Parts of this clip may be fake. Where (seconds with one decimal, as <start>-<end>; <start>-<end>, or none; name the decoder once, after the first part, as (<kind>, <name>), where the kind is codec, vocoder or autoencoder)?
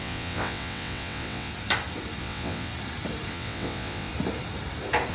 0.0-1.5 (vocoder, WaveNeXt); 2.2-2.7; 3.3-4.1